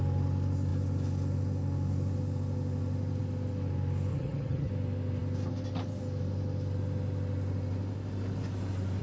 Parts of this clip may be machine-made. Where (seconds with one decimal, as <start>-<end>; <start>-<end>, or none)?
4.1-4.7